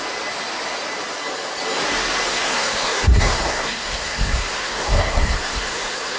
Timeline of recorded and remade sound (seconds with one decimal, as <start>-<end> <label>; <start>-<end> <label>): 0.0-2.3 recorded; 2.3-6.2 remade